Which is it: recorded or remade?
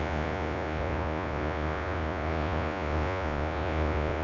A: remade